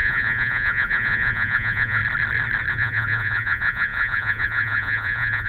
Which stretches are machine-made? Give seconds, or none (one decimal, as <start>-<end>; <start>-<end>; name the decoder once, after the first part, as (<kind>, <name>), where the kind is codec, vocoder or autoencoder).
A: 0.0-2.0 (vocoder, Vocos); 2.7-5.5